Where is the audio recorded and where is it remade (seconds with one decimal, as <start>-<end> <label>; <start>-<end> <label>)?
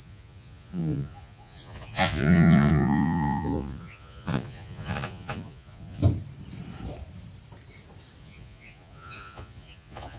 0.0-6.0 remade; 6.0-8.2 recorded; 8.2-10.2 remade